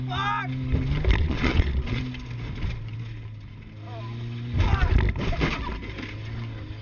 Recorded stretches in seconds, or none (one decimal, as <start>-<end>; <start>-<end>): 0.0-1.2; 2.0-6.8